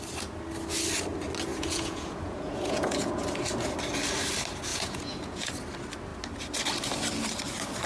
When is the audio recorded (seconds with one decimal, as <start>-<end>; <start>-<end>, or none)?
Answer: 0.0-1.5; 3.1-4.7; 5.5-7.9